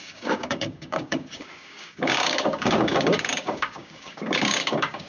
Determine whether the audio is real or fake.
fake